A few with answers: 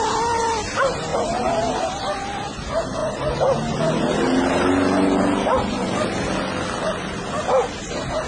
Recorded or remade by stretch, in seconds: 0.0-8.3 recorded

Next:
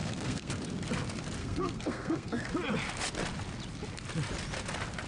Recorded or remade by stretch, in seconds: 0.0-0.5 remade; 0.5-1.4 recorded; 1.4-2.5 remade; 2.5-5.1 recorded

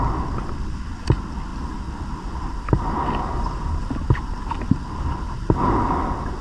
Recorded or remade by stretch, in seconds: 0.0-6.4 recorded

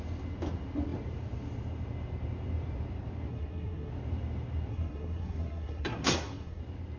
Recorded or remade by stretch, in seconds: 0.0-3.3 recorded; 3.3-3.9 remade; 3.9-4.7 recorded; 4.7-6.6 remade; 6.6-7.0 recorded

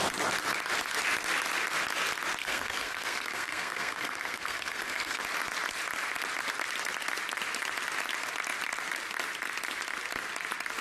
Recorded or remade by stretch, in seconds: 0.0-2.4 recorded; 2.4-5.2 remade; 5.2-10.8 recorded

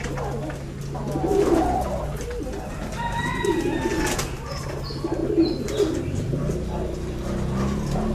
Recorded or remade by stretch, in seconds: 0.0-8.1 recorded

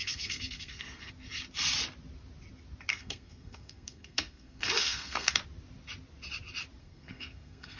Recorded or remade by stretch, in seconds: 0.0-1.1 remade; 1.1-2.9 recorded; 2.9-5.4 remade; 5.4-6.8 recorded; 6.8-7.8 remade

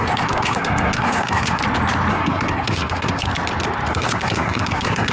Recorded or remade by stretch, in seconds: 0.0-1.6 remade; 1.6-2.1 recorded; 2.1-3.3 remade; 3.3-3.9 recorded; 3.9-5.1 remade